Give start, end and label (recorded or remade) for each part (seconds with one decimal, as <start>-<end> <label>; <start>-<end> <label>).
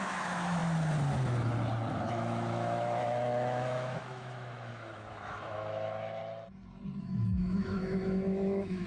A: 0.0-0.6 remade; 0.6-1.9 recorded; 1.9-6.2 remade; 6.2-7.0 recorded; 7.0-8.9 remade